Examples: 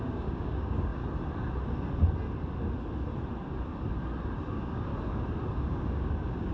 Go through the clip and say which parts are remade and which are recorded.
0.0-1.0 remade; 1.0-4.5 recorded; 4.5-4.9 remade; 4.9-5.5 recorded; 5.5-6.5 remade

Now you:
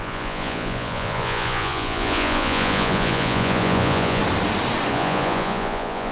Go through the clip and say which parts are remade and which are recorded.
0.0-4.2 remade; 4.2-4.9 recorded; 4.9-6.1 remade